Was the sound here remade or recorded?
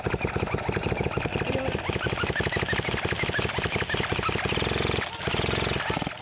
recorded